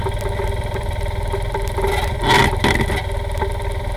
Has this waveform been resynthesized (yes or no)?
no